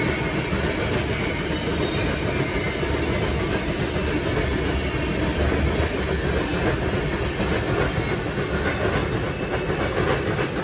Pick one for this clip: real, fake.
real